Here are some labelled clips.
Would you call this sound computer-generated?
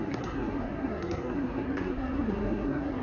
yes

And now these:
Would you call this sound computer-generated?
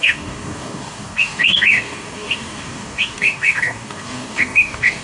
yes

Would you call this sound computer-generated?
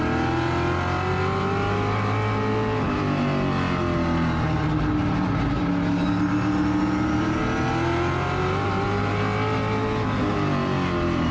no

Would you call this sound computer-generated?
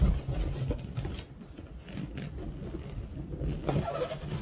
no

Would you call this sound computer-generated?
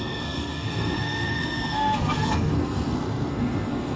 yes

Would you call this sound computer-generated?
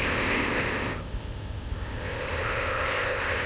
yes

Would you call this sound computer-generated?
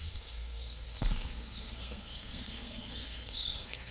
yes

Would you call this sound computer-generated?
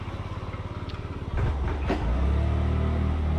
no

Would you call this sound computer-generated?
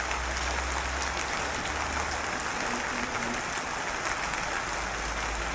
no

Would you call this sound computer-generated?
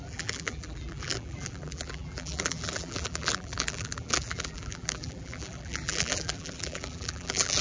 yes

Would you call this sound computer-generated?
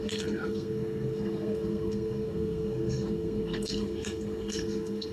yes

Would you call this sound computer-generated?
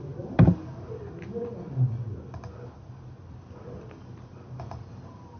no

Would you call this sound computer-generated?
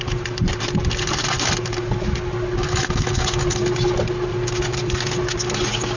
no